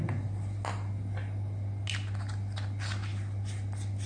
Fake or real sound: real